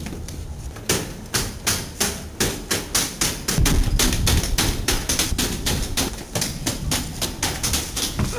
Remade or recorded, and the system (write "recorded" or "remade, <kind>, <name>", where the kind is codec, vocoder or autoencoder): recorded